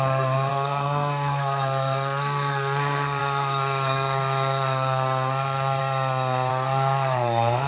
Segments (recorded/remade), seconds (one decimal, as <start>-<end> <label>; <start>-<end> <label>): 0.0-5.8 remade; 5.8-6.5 recorded; 6.5-7.7 remade